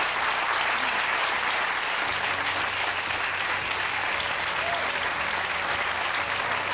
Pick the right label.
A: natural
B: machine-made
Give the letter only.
A